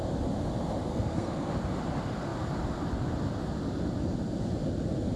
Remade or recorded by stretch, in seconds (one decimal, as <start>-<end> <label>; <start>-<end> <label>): 0.0-0.9 recorded; 0.9-1.5 remade; 1.5-5.2 recorded